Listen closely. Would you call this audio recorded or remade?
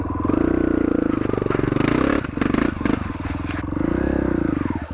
recorded